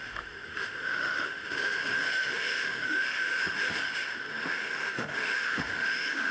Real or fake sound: fake